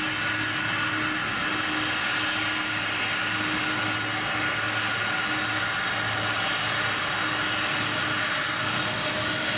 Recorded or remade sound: recorded